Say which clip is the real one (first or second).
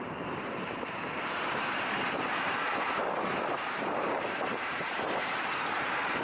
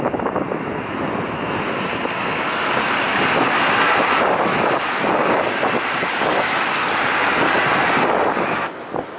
second